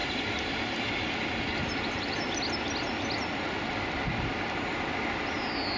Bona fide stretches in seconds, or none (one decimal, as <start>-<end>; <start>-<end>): 0.0-5.8